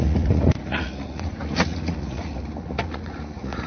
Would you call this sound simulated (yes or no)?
yes